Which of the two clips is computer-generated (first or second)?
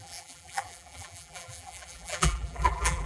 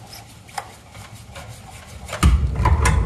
first